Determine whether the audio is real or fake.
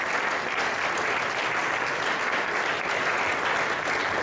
real